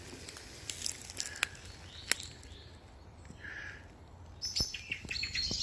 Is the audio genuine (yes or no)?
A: yes